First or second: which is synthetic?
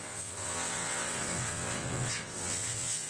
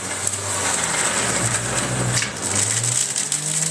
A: first